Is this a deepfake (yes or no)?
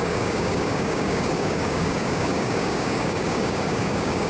yes